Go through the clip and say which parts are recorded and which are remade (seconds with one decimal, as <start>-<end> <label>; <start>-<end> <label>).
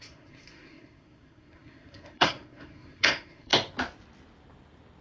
0.0-3.5 remade; 3.5-5.0 recorded